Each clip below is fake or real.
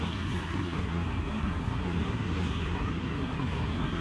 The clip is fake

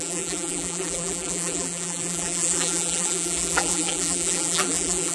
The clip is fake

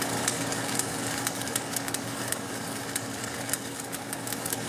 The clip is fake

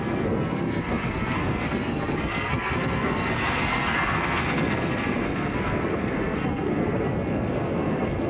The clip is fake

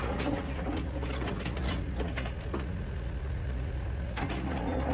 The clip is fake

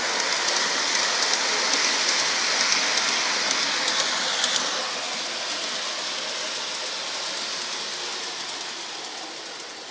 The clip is real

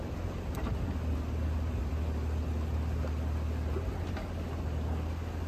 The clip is real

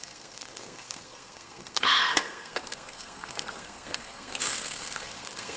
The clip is fake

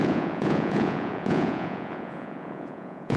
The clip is fake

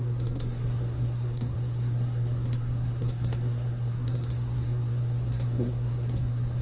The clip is fake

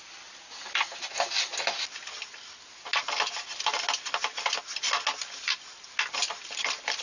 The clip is real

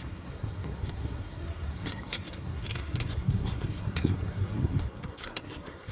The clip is fake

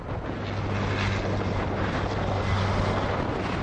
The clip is real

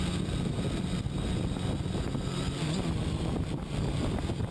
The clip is real